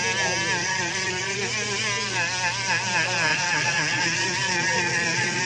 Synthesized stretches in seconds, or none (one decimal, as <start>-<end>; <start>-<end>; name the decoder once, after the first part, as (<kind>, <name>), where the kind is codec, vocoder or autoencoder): 0.6-1.4 (vocoder, Vocos); 3.3-5.4